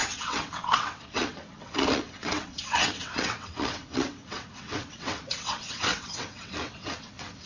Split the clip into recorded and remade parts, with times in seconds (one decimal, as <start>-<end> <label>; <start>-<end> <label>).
0.0-7.5 remade